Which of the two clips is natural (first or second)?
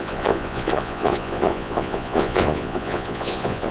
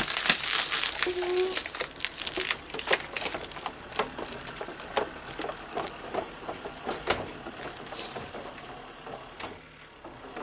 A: second